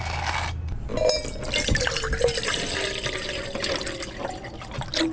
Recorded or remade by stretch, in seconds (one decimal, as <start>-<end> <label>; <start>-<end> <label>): 0.0-5.1 recorded